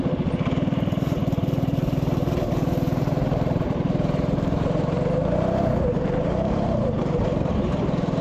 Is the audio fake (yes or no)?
yes